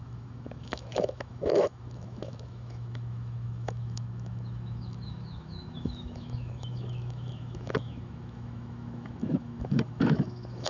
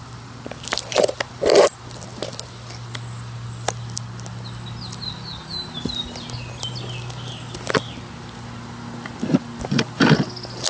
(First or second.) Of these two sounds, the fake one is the first